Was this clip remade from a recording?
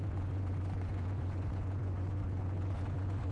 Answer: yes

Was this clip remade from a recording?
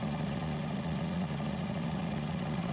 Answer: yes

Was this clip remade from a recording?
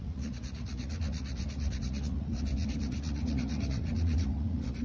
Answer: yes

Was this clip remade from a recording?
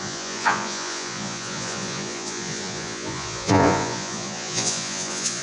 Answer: yes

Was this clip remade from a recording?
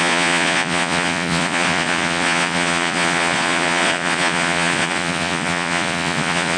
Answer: yes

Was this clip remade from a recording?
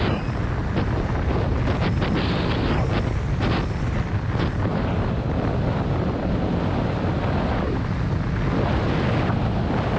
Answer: no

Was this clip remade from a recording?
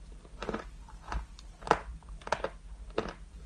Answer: no